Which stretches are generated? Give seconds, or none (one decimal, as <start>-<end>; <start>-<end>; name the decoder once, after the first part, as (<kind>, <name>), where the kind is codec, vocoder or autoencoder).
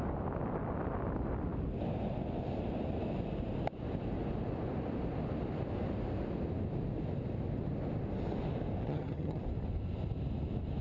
8.8-9.4 (vocoder, HiFi-GAN)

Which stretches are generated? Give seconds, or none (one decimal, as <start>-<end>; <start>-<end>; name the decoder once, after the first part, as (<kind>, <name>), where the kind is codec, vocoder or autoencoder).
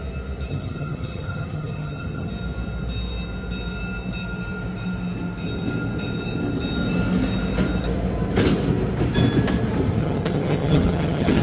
0.5-2.3 (vocoder, HiFi-GAN); 10.0-11.4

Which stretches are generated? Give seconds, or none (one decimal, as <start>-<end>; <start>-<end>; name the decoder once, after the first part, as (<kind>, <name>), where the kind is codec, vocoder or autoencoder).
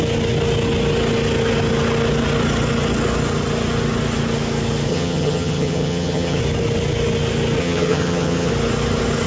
4.9-6.4 (vocoder, HiFi-GAN); 7.6-8.5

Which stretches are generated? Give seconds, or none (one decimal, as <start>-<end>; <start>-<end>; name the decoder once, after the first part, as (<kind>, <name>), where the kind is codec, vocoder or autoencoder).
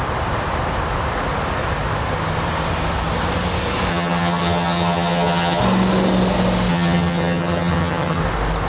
3.9-5.6 (vocoder, HiFi-GAN); 6.7-8.2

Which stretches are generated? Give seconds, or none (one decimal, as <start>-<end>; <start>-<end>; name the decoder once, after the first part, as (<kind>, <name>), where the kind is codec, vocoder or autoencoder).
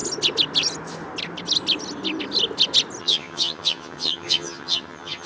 3.0-5.3 (vocoder, HiFi-GAN)